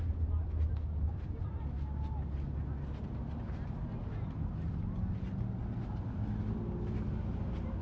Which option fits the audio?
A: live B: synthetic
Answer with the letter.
A